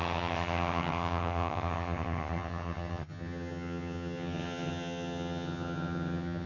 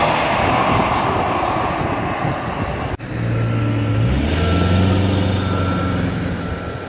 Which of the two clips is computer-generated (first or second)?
first